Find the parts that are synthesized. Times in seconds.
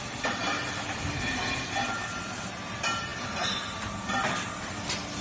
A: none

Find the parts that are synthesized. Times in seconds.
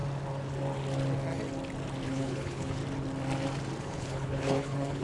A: 2.1-2.8 (codec, HILCodec); 3.8-5.0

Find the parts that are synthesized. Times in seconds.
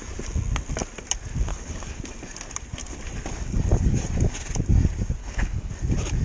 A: 1.5-2.0 (codec, HILCodec); 5.2-5.7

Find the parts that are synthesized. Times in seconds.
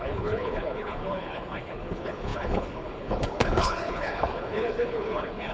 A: 0.0-5.5 (codec, HILCodec)